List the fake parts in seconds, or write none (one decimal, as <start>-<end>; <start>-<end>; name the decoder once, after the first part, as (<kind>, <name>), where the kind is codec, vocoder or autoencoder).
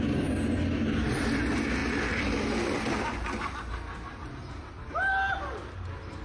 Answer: none